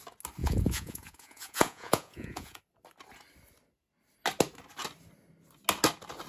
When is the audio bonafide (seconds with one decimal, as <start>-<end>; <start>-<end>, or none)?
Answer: 0.0-0.4; 2.6-6.3